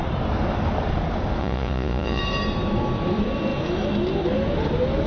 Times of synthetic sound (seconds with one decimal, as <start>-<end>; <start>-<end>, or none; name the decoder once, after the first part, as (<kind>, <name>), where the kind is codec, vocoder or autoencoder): 1.4-2.2 (vocoder, Vocos)

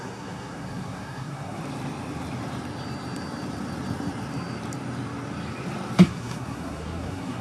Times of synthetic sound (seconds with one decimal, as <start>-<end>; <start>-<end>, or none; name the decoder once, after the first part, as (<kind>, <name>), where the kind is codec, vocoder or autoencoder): 0.0-1.6 (codec, SNAC); 6.0-7.4

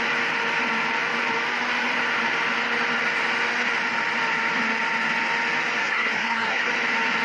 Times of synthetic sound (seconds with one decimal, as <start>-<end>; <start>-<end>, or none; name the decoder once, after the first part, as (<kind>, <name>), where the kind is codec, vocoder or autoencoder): 5.8-6.7 (codec, SNAC)

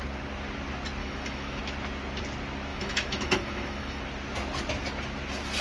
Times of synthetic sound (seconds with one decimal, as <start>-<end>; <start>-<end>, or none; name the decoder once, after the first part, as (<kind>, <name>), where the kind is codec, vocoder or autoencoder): 1.0-1.6 (autoencoder, DAC-VAE); 2.7-4.0

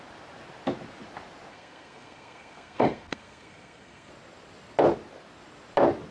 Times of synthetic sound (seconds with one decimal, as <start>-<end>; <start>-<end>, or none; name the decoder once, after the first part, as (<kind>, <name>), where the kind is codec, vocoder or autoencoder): 1.5-4.1 (codec, SNAC)